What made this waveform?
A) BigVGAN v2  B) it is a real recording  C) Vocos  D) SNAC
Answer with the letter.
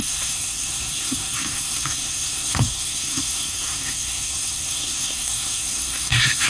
D